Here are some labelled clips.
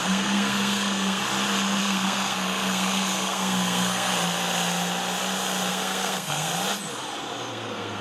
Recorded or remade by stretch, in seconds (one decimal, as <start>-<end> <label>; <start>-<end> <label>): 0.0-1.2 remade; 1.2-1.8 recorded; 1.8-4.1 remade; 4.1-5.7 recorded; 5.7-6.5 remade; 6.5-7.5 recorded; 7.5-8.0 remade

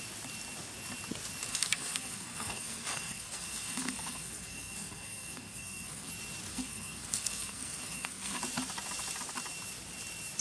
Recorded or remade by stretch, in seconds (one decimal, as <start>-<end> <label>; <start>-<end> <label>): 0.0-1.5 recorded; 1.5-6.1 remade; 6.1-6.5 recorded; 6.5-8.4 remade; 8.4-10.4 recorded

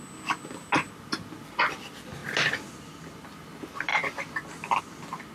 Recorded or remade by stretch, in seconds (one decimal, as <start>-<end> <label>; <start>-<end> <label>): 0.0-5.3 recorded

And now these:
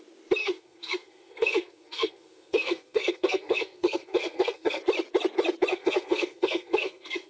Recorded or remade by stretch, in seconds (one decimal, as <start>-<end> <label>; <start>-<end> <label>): 0.0-0.4 recorded; 0.4-4.8 remade; 4.8-5.7 recorded; 5.7-7.3 remade